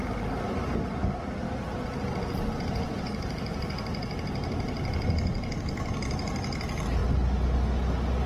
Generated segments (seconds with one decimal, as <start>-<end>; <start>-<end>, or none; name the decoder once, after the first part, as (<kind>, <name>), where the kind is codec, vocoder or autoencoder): none